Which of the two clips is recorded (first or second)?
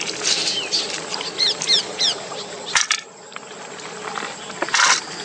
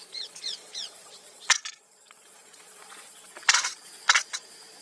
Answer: first